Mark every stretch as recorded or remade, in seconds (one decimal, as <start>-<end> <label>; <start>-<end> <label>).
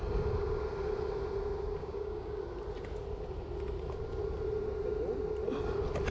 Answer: 0.0-1.8 recorded; 1.8-2.4 remade; 2.4-6.1 recorded